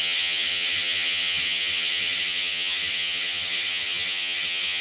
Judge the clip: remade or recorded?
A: remade